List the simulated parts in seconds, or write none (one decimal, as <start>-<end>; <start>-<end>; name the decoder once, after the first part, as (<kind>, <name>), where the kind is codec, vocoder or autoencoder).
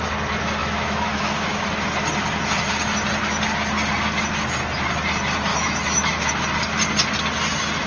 0.6-1.6 (autoencoder, DAC-VAE); 5.5-6.3